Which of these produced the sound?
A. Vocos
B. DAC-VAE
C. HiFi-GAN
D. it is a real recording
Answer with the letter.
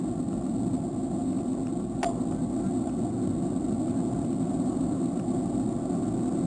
D